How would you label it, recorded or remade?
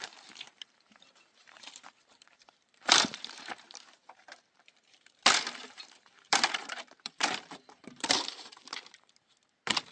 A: remade